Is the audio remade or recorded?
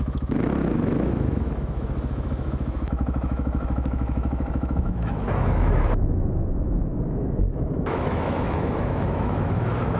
remade